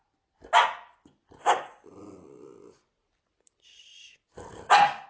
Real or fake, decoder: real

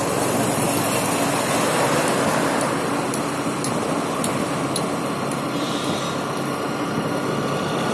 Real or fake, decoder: real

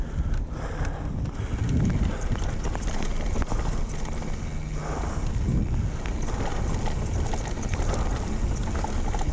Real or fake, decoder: real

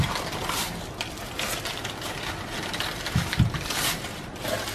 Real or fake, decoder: real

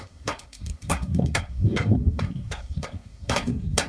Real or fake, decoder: fake, codec, SNAC